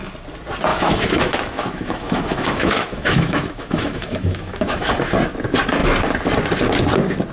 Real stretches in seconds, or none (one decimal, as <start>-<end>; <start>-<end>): 0.0-0.7; 4.9-7.3